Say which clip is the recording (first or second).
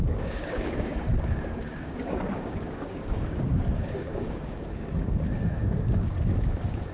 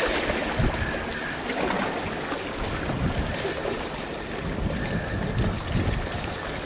second